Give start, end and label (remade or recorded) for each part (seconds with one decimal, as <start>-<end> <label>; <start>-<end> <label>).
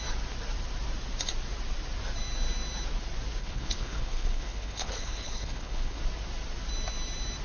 0.0-3.4 recorded; 3.4-6.0 remade; 6.0-7.4 recorded